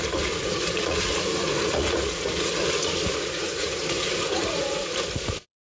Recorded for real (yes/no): no